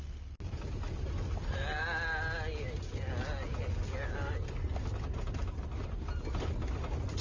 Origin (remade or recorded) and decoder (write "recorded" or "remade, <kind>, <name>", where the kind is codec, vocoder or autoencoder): recorded